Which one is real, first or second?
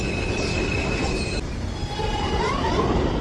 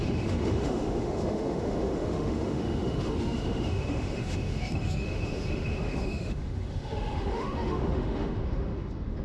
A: first